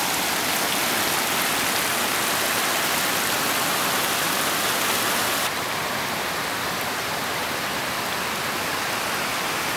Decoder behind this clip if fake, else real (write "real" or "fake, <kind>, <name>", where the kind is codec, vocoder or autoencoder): real